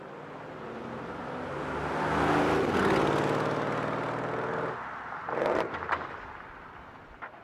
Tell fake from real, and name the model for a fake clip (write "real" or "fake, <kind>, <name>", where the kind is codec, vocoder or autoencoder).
real